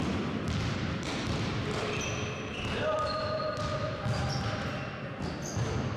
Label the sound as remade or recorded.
recorded